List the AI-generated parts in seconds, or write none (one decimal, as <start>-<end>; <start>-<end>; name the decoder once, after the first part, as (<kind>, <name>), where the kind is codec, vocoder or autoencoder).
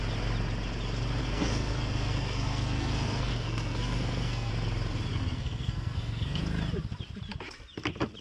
1.2-4.5 (codec, SNAC); 5.1-6.4